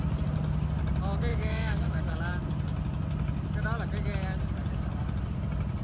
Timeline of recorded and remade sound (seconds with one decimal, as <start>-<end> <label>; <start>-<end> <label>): 0.0-1.3 recorded; 1.3-2.0 remade; 2.0-5.8 recorded